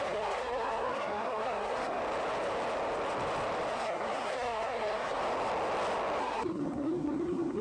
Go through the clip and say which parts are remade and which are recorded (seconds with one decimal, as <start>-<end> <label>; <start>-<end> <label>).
0.0-2.0 remade; 2.0-3.7 recorded; 3.7-5.2 remade; 5.2-6.2 recorded; 6.2-7.6 remade